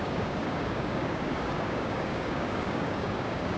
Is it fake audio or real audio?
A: fake